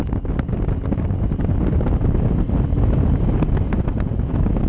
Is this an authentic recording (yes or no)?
yes